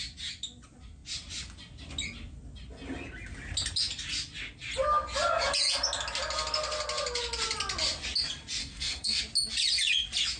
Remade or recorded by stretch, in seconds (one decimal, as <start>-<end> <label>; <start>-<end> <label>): 0.0-8.6 recorded; 8.6-9.2 remade; 9.2-10.4 recorded